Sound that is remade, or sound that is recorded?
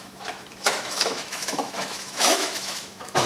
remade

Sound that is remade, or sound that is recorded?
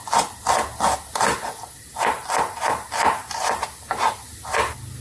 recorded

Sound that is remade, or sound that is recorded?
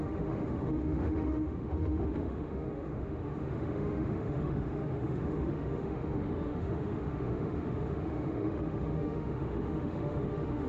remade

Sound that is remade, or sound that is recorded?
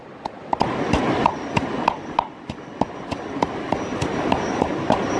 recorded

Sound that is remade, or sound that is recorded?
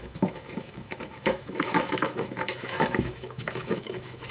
remade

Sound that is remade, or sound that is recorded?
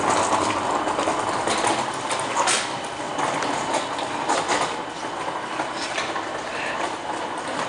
recorded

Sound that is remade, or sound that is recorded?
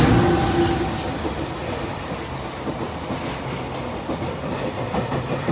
recorded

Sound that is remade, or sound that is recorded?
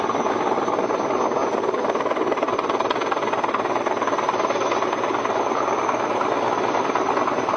recorded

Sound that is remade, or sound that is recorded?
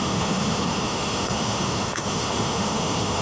remade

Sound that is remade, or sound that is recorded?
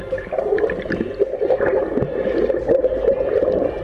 recorded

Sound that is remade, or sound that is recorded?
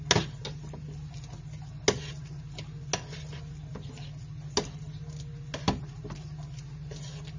recorded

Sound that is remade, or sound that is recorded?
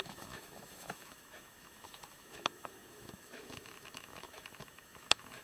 remade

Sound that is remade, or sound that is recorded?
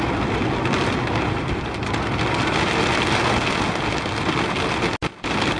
recorded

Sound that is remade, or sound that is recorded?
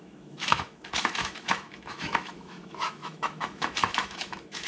remade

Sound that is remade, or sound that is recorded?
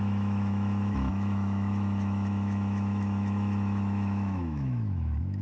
remade